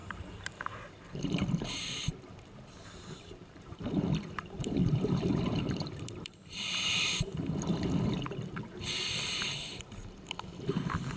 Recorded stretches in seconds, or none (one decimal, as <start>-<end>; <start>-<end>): none